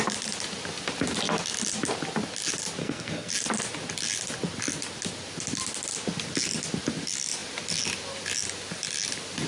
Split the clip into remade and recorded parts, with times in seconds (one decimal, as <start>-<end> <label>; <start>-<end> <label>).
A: 0.0-2.8 recorded; 2.8-3.3 remade; 3.3-9.5 recorded